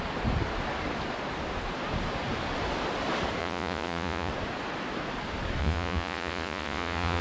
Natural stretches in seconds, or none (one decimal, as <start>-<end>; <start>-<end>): 0.0-3.4; 4.3-5.6